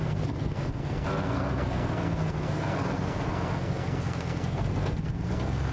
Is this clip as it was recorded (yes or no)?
no